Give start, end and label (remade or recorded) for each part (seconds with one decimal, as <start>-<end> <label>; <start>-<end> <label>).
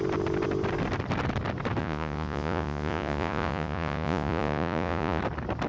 0.0-1.8 recorded; 1.8-5.2 remade; 5.2-5.7 recorded